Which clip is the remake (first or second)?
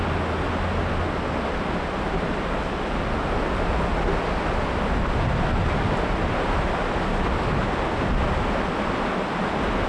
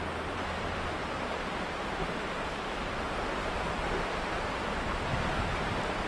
second